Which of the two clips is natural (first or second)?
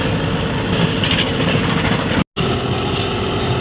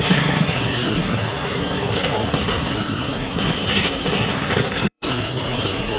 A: first